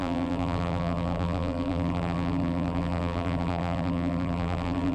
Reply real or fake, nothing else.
fake